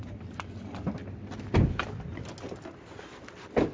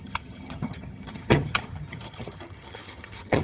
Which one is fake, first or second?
second